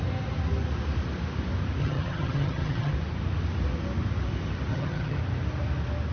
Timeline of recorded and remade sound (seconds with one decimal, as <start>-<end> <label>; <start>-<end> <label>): 0.0-1.8 recorded; 1.8-2.9 remade; 2.9-4.7 recorded; 4.7-5.2 remade; 5.2-6.1 recorded

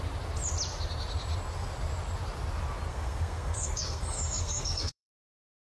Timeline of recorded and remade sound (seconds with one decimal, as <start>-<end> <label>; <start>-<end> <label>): 0.0-2.9 recorded; 2.9-5.6 remade

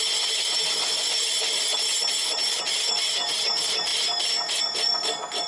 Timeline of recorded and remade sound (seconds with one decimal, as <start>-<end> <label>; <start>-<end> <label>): 0.0-5.5 recorded

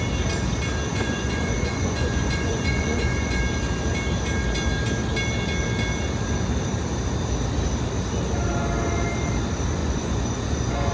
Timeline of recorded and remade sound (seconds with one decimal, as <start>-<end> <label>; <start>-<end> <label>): 0.0-0.9 recorded; 0.9-3.4 remade; 3.4-9.8 recorded; 9.8-10.9 remade

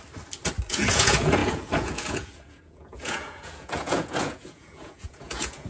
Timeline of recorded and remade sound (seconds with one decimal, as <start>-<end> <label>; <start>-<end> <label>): 0.0-0.7 recorded; 0.7-5.7 remade

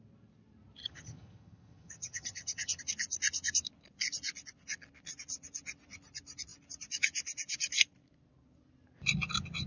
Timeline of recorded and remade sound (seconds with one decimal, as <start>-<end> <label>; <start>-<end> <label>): 0.0-0.8 recorded; 0.8-2.8 remade; 2.8-9.7 recorded

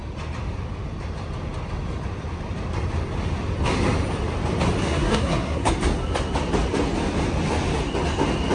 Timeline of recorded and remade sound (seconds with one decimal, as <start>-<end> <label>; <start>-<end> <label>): 0.0-4.8 recorded; 4.8-5.7 remade; 5.7-8.5 recorded